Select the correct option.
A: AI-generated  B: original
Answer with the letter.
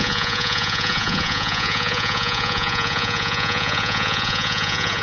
A